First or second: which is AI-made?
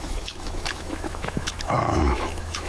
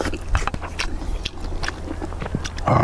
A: first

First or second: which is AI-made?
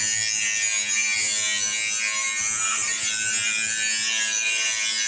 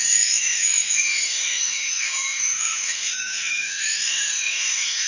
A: second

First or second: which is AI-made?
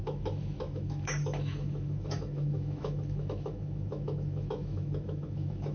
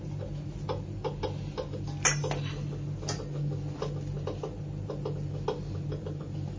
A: first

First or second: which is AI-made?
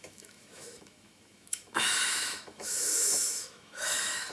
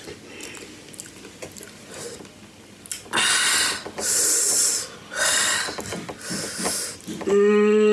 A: first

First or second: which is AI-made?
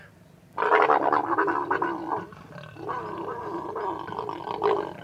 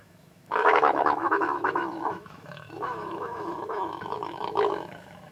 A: second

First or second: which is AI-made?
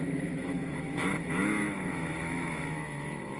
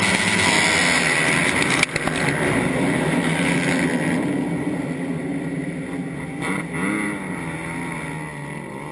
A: first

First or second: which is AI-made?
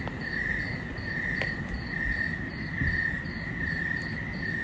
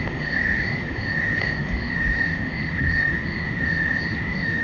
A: second